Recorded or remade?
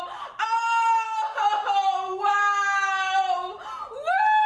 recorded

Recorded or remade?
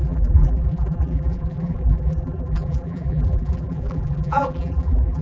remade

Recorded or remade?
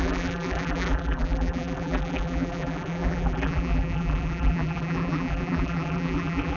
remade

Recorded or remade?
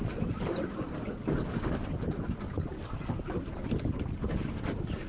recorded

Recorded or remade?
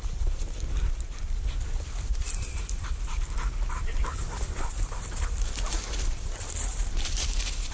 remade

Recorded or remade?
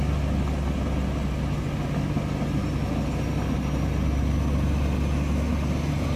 recorded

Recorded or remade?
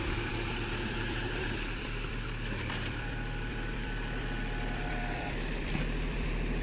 remade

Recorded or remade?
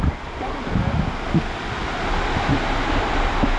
recorded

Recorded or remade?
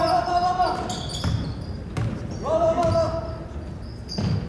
recorded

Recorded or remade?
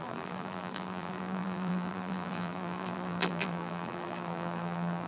remade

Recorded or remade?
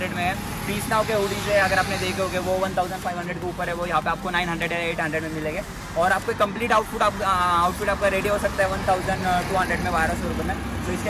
recorded